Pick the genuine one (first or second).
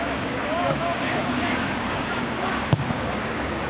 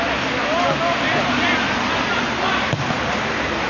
second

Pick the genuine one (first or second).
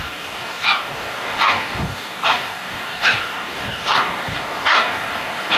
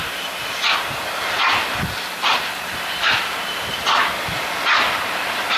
second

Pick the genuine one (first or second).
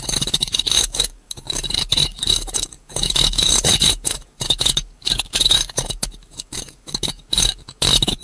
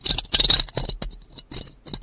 second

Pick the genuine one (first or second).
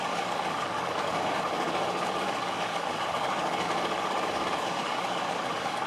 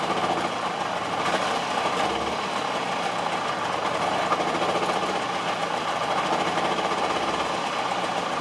second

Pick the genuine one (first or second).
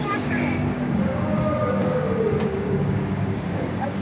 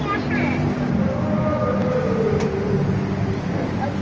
second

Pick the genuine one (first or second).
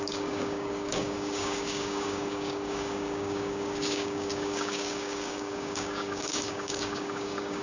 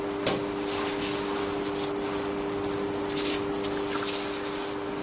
second